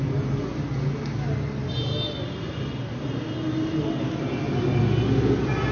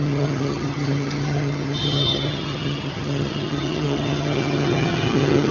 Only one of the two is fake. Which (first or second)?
second